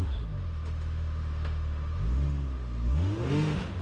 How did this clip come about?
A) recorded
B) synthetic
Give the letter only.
B